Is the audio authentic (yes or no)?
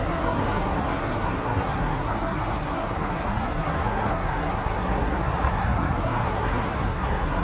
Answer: no